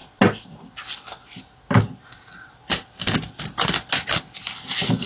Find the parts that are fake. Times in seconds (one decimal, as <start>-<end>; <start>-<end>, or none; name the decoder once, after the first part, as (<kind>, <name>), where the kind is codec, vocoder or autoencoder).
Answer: none